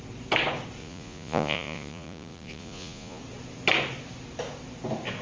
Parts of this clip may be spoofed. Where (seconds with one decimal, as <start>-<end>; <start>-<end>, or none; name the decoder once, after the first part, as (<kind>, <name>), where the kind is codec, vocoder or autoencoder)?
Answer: 0.8-3.2 (vocoder, Vocos)

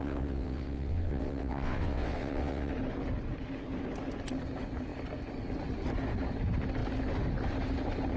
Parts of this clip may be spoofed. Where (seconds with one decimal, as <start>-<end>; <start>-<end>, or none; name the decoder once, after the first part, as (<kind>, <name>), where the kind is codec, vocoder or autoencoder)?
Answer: 0.0-2.7 (vocoder, WaveNeXt)

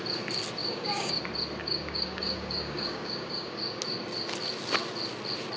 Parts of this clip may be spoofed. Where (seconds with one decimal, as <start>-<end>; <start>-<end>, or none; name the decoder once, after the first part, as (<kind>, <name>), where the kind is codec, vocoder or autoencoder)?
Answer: 0.6-1.2 (codec, DAC); 1.6-3.8

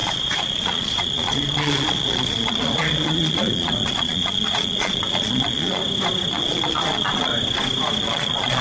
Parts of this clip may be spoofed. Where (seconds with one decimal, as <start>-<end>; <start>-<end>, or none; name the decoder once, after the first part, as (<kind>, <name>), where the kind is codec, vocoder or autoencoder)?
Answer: 0.0-5.8 (vocoder, Vocos); 6.3-7.3; 8.0-8.6

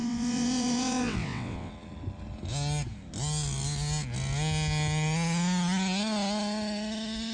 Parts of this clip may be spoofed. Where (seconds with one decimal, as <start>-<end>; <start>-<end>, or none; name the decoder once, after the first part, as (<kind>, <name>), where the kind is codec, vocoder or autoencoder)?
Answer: 0.0-1.7 (vocoder, WaveNeXt)

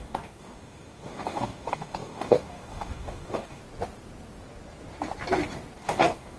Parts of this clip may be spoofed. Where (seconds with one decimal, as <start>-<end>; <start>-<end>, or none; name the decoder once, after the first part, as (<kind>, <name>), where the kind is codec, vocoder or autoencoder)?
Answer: 0.0-3.6 (codec, DAC); 5.8-6.4

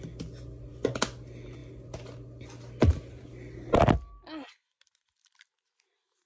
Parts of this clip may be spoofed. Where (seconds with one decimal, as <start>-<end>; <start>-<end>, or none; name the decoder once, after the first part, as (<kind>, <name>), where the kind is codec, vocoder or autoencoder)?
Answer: none

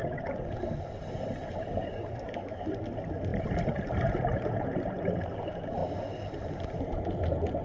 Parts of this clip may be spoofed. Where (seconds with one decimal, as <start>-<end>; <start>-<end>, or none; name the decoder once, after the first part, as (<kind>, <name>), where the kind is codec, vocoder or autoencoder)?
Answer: 1.7-2.7 (codec, DAC)